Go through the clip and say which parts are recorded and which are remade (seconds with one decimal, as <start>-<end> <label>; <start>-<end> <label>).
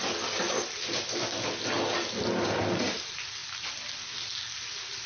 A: 0.0-5.1 recorded